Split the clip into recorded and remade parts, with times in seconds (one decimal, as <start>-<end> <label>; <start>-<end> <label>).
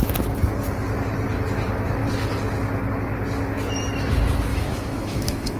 0.0-4.5 recorded; 4.5-5.6 remade